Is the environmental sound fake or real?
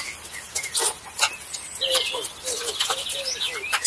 real